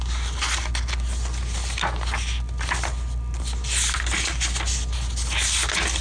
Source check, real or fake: real